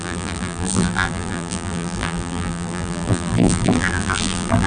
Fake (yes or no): yes